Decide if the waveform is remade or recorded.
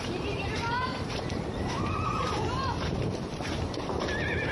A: remade